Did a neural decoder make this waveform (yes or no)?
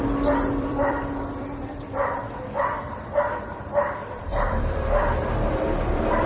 yes